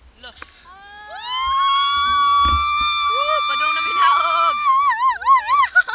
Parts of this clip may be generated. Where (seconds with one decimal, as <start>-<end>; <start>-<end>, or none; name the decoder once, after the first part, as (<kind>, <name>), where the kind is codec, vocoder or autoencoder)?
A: none